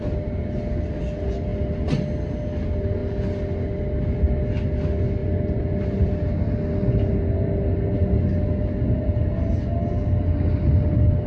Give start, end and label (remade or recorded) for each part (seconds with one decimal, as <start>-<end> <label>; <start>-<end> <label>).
0.0-11.3 recorded